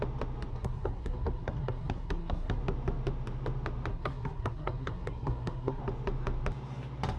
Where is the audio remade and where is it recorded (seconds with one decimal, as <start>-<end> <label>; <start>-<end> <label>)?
0.0-0.5 recorded; 0.5-2.6 remade; 2.6-3.9 recorded; 3.9-5.8 remade; 5.8-7.2 recorded